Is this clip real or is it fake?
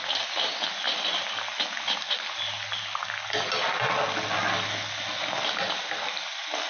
real